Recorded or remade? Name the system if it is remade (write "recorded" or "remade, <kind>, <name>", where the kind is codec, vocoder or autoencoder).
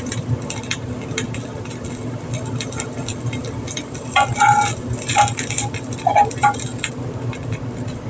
remade, vocoder, BigVGAN v2